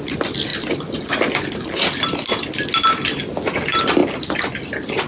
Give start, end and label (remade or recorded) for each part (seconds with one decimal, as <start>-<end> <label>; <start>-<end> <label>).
0.0-0.5 remade; 0.5-3.6 recorded; 3.6-4.0 remade; 4.0-5.1 recorded